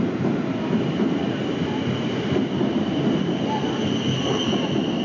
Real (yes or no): yes